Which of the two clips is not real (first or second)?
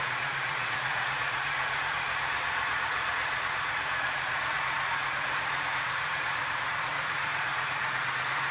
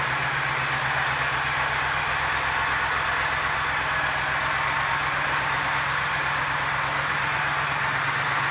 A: first